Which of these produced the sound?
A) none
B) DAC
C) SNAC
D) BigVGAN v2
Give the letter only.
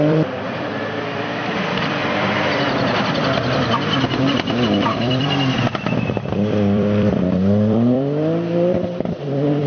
D